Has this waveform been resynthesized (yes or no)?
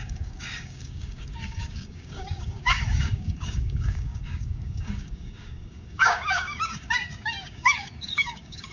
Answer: yes